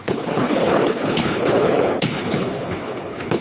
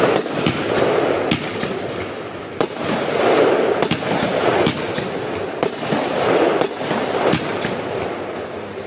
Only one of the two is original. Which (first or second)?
second